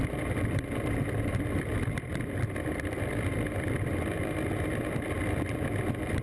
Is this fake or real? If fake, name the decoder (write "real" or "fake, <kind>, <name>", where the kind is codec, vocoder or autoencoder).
fake, vocoder, BigVGAN v2